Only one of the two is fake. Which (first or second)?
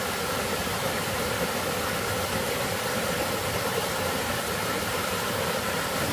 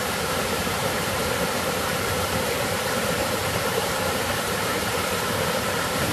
second